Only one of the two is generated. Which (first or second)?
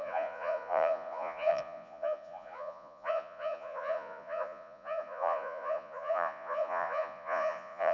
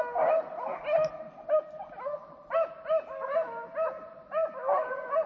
first